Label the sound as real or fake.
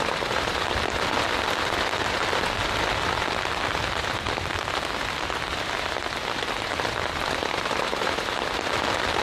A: real